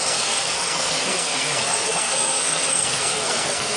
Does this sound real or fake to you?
fake